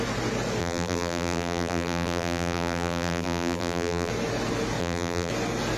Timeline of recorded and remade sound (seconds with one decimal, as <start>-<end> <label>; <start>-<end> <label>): 0.0-0.6 recorded; 0.6-4.1 remade; 4.1-4.8 recorded; 4.8-5.3 remade; 5.3-5.8 recorded